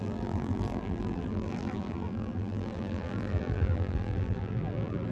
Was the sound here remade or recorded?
remade